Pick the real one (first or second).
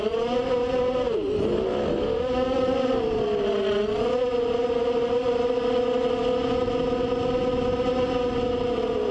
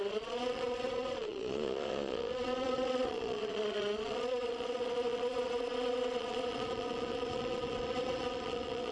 first